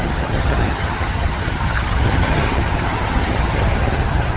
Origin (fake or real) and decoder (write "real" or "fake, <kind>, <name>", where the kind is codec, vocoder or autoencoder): fake, vocoder, HiFi-GAN